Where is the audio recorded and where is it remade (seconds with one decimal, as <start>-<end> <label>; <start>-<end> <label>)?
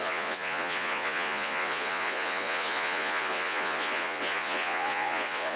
0.0-5.6 remade